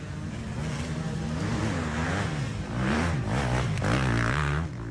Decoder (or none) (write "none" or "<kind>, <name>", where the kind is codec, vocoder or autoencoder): none